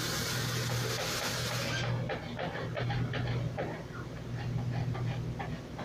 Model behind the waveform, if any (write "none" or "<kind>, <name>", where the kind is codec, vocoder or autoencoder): none